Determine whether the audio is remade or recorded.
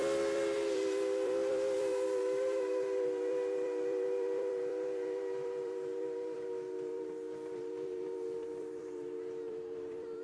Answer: remade